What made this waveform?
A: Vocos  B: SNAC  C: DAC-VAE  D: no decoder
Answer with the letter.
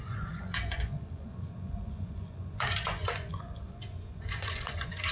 A